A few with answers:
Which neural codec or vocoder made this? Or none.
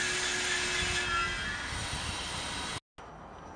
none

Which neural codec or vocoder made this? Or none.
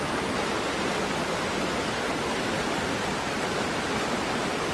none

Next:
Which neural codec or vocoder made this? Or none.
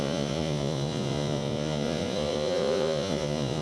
vocoder, Vocos